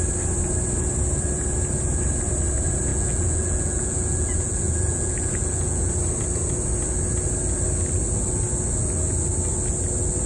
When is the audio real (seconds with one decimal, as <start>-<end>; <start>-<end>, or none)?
0.0-2.9; 5.9-10.3